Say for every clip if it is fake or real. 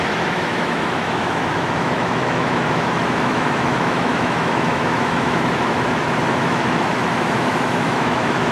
fake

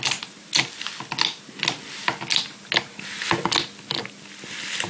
real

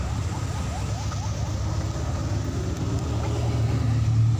real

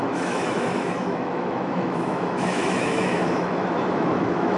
fake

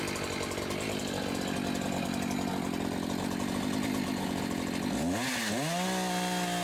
real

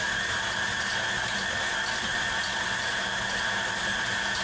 real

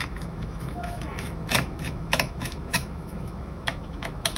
fake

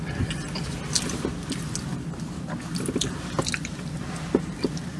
real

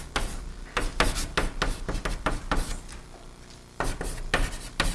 real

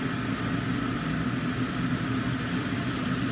real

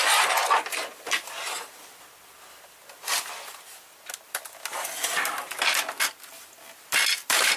real